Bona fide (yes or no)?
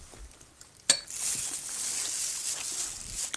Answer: yes